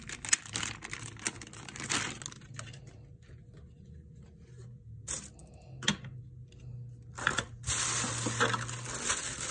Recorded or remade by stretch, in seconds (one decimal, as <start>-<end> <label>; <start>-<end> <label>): 0.0-9.5 recorded